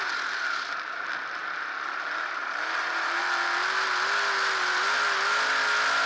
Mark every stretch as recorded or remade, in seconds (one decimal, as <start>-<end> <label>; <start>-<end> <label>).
0.0-2.4 recorded; 2.4-3.2 remade; 3.2-6.1 recorded